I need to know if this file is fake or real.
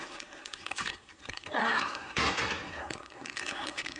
fake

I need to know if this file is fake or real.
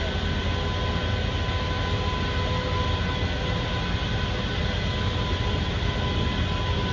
real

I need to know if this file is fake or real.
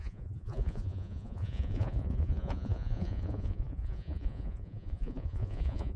fake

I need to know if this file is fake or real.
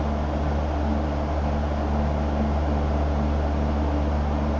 real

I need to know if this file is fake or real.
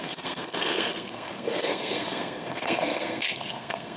fake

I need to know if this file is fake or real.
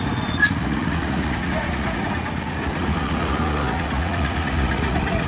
fake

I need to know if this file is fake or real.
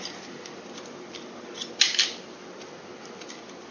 real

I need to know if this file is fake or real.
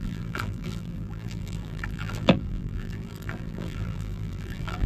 fake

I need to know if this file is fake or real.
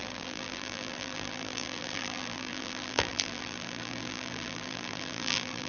fake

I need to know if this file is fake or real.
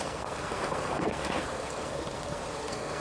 fake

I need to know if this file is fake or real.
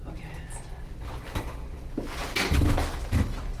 real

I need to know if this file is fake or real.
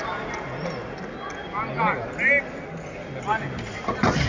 real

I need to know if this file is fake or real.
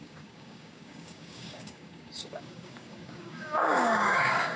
fake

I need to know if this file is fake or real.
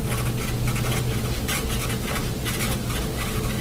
real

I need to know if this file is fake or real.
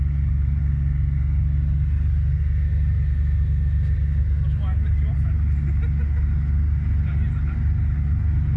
real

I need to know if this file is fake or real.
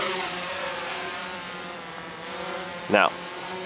fake